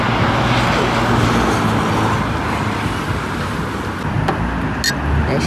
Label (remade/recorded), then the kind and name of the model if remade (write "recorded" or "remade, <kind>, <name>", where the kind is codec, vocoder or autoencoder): recorded